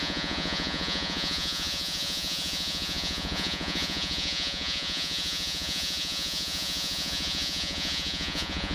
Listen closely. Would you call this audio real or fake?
fake